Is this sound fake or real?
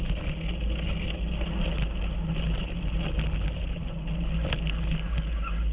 real